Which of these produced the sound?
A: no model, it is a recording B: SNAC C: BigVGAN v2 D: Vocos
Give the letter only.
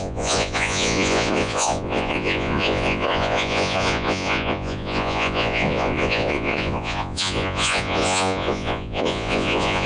D